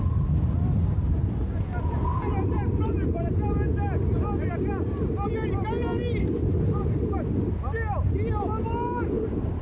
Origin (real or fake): real